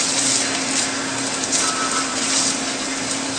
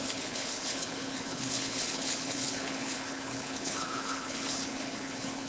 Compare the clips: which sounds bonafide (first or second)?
first